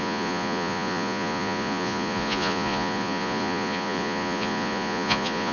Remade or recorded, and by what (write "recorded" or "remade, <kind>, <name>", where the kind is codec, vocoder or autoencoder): remade, vocoder, Vocos